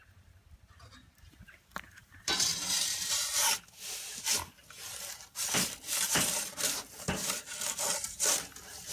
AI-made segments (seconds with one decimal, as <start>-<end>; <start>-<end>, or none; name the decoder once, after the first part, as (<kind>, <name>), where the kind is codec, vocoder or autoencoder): 0.0-3.3 (vocoder, BigVGAN v2)